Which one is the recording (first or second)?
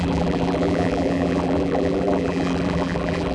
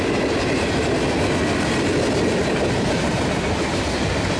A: second